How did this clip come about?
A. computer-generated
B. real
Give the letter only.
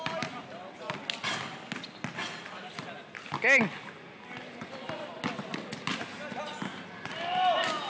B